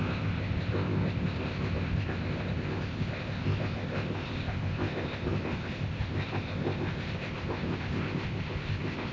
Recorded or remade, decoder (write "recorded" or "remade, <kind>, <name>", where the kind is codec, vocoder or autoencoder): remade, codec, ZipCodec